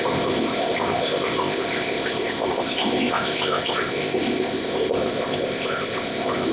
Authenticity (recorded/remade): remade